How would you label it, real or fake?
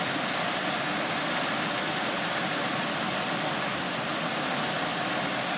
real